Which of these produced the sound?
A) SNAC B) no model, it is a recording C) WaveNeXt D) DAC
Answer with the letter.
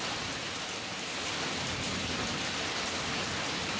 B